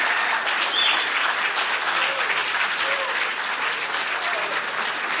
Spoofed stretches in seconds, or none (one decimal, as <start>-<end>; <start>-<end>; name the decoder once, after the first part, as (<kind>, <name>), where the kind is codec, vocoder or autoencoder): 2.4-2.9 (vocoder, BigVGAN v2); 3.3-3.9